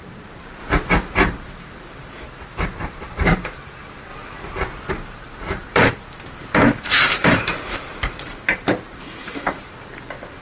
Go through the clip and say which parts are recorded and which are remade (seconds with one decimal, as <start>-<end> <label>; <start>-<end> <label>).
0.0-0.6 remade; 0.6-1.2 recorded; 1.2-4.1 remade; 4.1-4.9 recorded; 4.9-10.4 remade